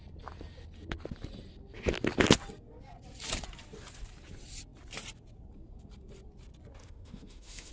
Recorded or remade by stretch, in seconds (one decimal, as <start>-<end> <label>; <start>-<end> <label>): 0.0-6.8 recorded; 6.8-7.7 remade